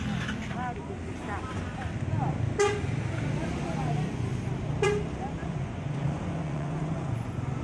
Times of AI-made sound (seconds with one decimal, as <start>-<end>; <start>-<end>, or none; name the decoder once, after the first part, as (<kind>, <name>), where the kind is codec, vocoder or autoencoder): 5.4-7.6 (vocoder, Vocos)